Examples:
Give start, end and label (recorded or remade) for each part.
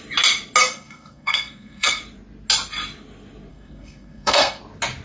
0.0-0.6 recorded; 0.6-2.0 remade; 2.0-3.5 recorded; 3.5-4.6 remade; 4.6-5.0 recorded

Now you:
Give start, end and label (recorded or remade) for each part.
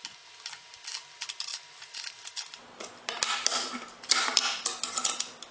0.0-5.5 recorded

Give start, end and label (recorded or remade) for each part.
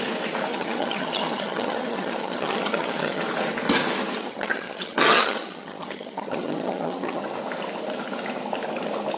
0.0-0.5 recorded; 0.5-3.2 remade; 3.2-4.2 recorded; 4.2-7.2 remade; 7.2-9.2 recorded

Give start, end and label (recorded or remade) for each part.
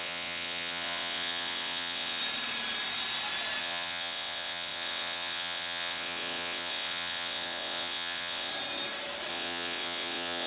0.0-2.2 remade; 2.2-3.6 recorded; 3.6-8.5 remade; 8.5-9.3 recorded; 9.3-10.5 remade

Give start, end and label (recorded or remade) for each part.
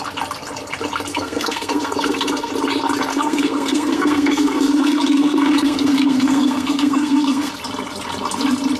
0.0-1.1 recorded; 1.1-2.5 remade; 2.5-3.1 recorded; 3.1-7.5 remade; 7.5-8.8 recorded